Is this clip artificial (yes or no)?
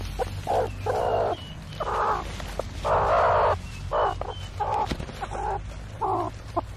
no